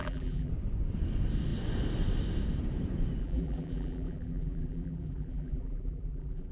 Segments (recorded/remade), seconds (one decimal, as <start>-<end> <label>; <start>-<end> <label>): 0.0-0.5 remade; 0.5-3.2 recorded; 3.2-6.5 remade